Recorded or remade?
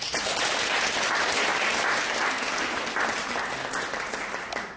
recorded